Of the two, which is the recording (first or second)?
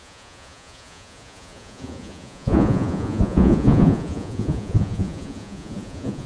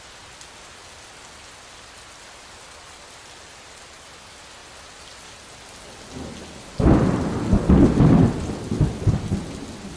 second